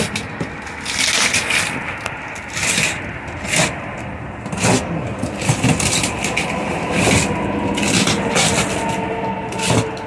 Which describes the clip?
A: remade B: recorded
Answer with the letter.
B